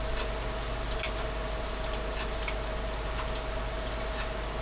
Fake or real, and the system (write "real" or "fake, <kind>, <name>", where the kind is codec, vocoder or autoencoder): real